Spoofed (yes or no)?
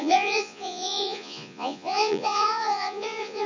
yes